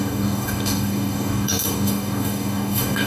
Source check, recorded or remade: remade